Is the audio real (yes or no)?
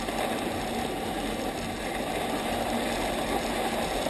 yes